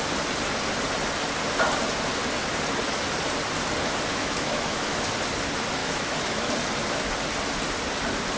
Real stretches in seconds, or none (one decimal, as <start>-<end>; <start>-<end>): 0.0-4.1; 5.1-5.8; 6.5-8.4

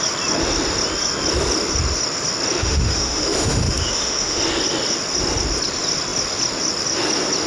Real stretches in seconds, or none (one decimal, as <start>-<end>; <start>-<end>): 0.0-2.6; 4.4-7.5

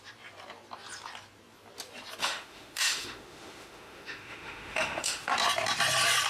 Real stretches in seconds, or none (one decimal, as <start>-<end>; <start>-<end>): 0.0-2.2; 5.3-6.3

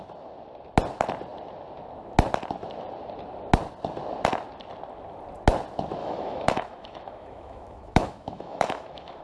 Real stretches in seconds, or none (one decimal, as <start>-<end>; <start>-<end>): 0.0-6.0

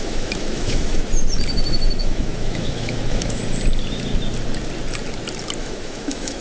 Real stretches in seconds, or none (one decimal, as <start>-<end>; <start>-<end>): 1.0-2.0; 3.4-5.6

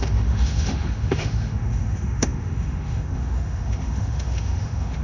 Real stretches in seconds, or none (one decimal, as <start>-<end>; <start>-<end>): none

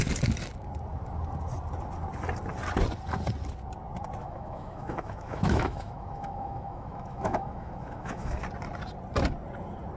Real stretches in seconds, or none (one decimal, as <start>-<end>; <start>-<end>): 0.0-4.2; 8.4-10.0

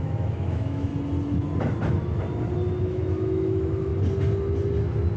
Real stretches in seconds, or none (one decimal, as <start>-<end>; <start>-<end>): 0.9-2.8; 3.9-5.2